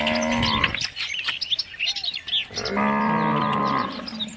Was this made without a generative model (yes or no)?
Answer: yes